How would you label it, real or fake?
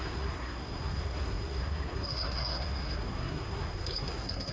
fake